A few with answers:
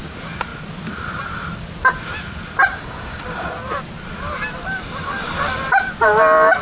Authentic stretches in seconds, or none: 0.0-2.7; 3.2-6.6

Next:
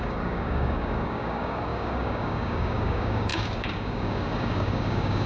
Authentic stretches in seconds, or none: none

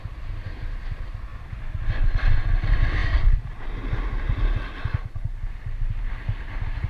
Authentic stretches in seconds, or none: 0.0-6.9

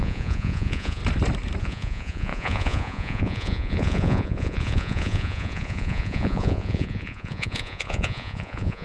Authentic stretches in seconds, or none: 1.0-1.6